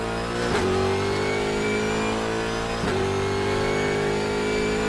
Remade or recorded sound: recorded